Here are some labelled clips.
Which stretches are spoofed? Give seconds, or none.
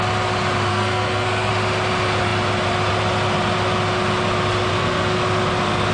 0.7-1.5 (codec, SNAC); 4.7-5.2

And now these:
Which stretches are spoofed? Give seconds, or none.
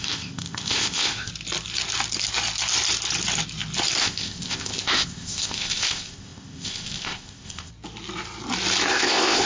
0.0-1.3 (codec, ZipCodec); 4.0-7.7; 8.9-9.4